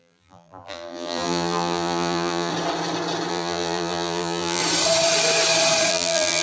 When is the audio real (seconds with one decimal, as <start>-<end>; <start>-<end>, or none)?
2.5-3.3; 4.6-5.9